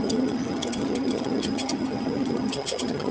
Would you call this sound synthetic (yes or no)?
yes